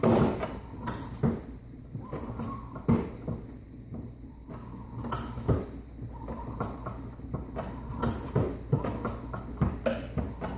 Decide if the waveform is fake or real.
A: real